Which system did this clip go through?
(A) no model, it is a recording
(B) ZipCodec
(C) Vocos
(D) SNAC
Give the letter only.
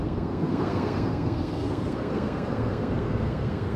D